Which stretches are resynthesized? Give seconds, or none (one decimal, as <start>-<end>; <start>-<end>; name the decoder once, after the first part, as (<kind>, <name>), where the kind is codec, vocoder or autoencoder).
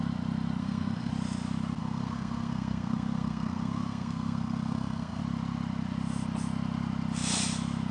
0.6-1.1 (codec, SNAC); 1.8-5.2